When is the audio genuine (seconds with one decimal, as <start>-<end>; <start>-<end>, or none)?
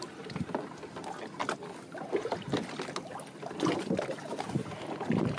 0.0-5.4